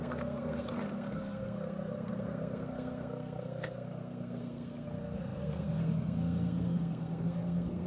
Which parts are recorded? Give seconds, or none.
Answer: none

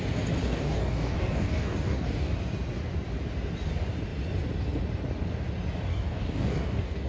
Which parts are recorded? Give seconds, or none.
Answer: 0.0-0.4; 2.3-5.9

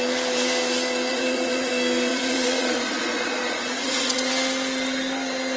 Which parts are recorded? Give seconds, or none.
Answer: 0.0-1.1; 1.7-2.1; 4.3-5.6